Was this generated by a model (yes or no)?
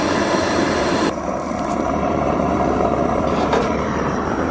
yes